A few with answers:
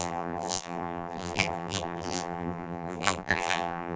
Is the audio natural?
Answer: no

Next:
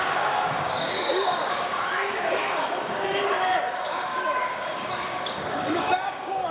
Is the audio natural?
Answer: no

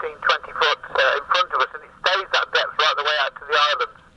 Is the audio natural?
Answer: no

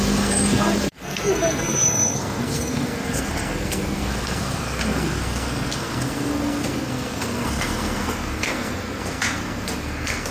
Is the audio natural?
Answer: no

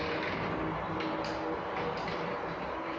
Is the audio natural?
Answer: yes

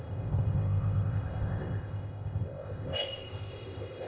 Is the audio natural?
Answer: no